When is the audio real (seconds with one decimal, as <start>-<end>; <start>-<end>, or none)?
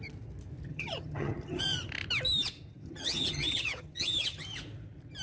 0.0-0.7; 1.6-2.7; 4.4-5.2